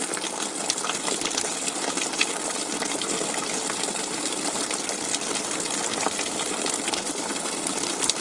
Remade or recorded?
recorded